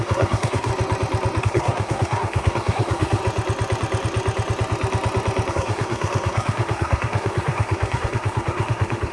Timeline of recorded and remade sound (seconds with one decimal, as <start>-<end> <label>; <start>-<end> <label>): 0.0-0.7 remade; 0.7-1.4 recorded; 1.4-3.2 remade; 3.2-5.5 recorded; 5.5-9.1 remade